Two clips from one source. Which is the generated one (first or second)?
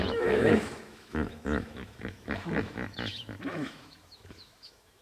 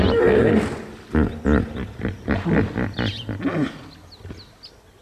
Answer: first